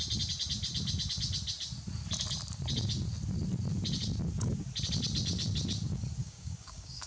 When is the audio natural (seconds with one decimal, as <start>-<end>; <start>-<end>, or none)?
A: 0.0-6.2